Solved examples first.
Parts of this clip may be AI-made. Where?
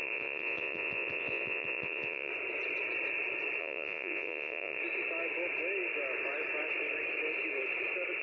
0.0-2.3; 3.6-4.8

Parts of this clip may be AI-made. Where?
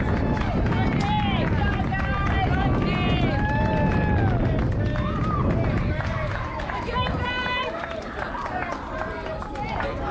none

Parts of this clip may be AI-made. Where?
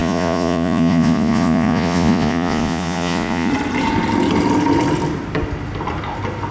0.0-3.5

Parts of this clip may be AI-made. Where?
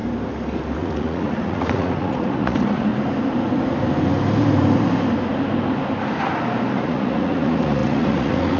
0.8-2.9; 6.7-8.6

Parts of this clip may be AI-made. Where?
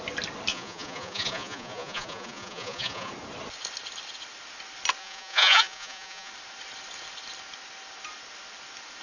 0.5-3.1; 5.0-6.3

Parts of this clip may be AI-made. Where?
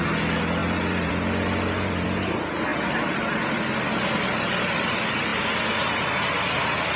0.6-1.1; 2.7-3.6